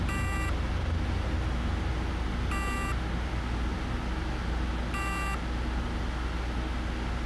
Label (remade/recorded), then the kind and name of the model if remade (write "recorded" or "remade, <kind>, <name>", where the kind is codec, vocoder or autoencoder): recorded